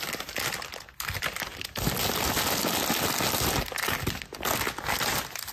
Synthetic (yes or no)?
no